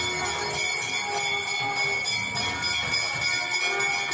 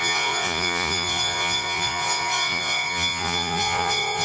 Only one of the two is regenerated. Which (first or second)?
second